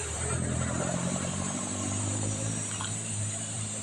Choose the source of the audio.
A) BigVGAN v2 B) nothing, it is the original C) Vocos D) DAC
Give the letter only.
A